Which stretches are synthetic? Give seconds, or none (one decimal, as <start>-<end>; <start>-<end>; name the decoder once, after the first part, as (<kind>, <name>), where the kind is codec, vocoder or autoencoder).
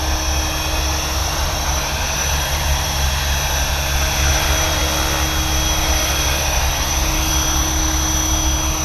1.2-3.2 (vocoder, BigVGAN v2); 4.3-4.8; 5.8-7.3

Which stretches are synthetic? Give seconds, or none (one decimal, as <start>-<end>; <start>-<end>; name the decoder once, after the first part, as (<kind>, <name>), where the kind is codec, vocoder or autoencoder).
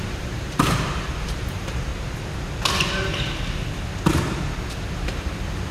0.0-1.9 (vocoder, BigVGAN v2); 4.9-5.7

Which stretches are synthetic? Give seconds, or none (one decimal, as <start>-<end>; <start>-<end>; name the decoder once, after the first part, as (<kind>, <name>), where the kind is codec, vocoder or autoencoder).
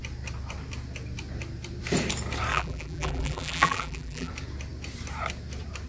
2.5-4.3 (vocoder, BigVGAN v2)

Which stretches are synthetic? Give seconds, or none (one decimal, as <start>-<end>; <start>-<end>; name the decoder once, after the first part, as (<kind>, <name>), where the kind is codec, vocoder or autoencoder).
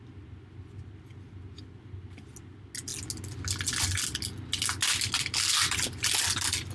none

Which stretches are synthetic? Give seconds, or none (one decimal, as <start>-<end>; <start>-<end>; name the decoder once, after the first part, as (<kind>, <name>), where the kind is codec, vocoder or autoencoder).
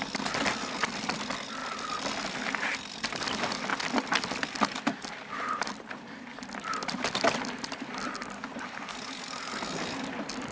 0.0-1.6 (vocoder, BigVGAN v2); 2.4-10.5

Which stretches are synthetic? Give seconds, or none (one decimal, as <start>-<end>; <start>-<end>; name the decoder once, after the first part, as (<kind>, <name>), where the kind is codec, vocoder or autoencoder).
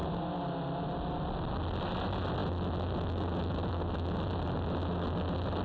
none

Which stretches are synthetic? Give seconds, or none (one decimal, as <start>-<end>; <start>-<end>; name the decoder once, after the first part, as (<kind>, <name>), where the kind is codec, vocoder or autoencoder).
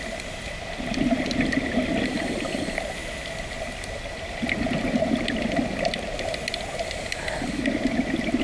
none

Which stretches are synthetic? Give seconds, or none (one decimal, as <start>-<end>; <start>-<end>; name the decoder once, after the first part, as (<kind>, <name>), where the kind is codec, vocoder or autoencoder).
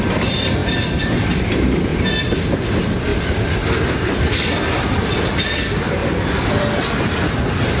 0.0-1.9 (vocoder, BigVGAN v2); 2.5-3.1; 3.9-6.0